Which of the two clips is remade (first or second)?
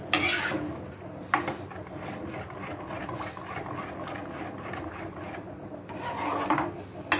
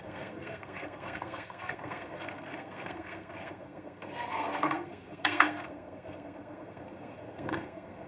second